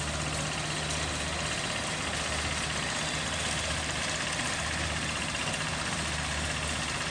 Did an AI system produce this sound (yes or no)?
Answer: no